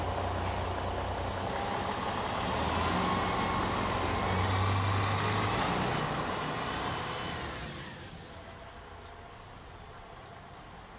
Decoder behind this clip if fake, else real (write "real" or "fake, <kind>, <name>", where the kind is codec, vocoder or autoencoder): real